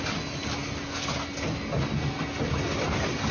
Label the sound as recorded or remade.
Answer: recorded